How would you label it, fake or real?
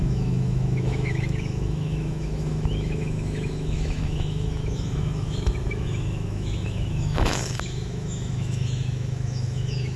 fake